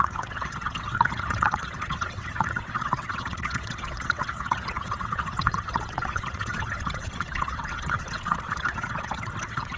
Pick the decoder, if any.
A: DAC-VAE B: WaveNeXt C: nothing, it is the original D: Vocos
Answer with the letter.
B